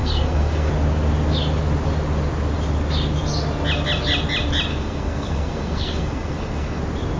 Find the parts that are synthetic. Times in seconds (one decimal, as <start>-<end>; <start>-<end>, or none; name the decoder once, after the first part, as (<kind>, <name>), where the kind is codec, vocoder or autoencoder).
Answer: 0.0-0.7 (codec, SNAC); 4.7-6.8